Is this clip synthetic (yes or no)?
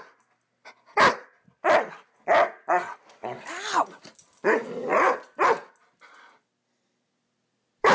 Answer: no